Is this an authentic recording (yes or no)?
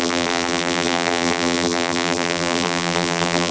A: no